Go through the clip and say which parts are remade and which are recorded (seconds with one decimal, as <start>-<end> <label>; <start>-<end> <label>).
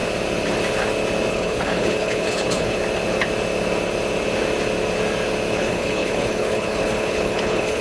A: 0.0-1.3 recorded; 1.3-2.8 remade; 2.8-5.5 recorded; 5.5-7.8 remade